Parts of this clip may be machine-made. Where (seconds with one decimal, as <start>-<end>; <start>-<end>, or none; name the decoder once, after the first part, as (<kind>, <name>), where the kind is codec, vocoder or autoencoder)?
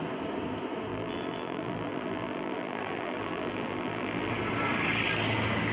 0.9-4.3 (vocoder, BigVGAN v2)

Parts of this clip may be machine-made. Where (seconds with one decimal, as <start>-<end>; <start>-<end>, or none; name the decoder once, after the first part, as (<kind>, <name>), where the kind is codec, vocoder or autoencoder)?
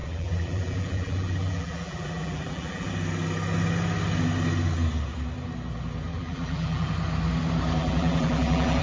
0.0-2.9 (vocoder, BigVGAN v2); 6.1-6.9; 7.8-8.8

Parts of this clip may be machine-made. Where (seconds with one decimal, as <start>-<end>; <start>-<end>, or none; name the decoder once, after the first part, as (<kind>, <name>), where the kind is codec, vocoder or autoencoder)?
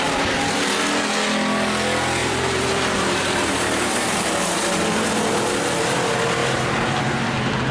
2.2-5.1 (vocoder, BigVGAN v2); 6.4-7.0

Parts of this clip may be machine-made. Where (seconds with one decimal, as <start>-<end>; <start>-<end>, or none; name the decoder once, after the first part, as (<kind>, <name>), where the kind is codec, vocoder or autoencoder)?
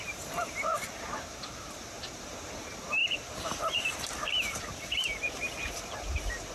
0.0-6.5 (vocoder, BigVGAN v2)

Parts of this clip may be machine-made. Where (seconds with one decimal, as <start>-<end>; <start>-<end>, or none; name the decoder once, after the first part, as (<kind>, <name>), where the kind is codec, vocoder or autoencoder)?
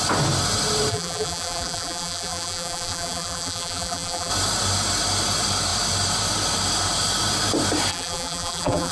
0.9-4.3 (vocoder, BigVGAN v2); 7.9-8.9